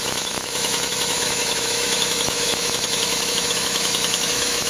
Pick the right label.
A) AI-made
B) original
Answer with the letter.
A